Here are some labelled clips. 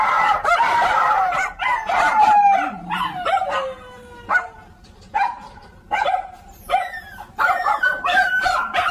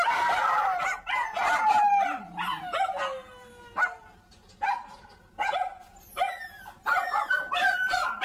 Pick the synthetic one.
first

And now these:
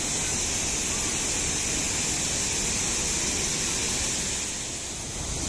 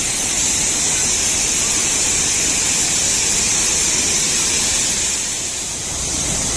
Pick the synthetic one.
second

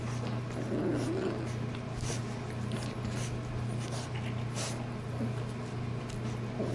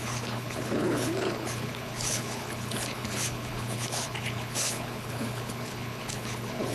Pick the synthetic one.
second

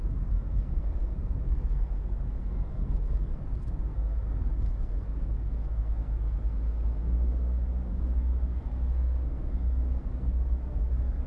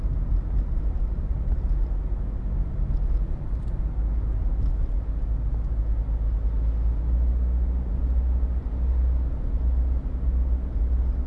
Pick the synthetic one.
first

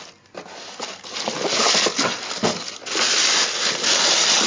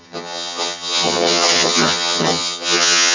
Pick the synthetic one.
second